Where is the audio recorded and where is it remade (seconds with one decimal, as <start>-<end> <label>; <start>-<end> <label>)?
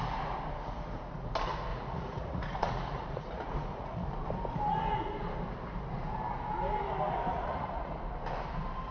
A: 0.0-1.7 recorded; 1.7-4.1 remade; 4.1-7.3 recorded; 7.3-7.9 remade; 7.9-8.9 recorded